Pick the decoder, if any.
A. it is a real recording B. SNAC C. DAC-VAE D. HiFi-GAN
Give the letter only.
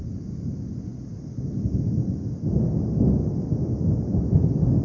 A